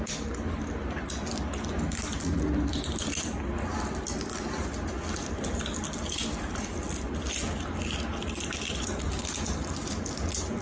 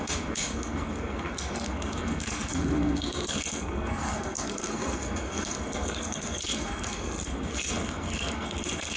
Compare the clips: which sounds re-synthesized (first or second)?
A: second